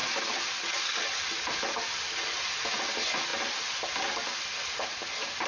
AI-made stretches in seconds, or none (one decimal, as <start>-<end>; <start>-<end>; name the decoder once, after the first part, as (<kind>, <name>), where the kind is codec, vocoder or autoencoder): none